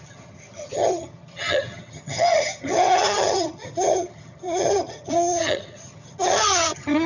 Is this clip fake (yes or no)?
yes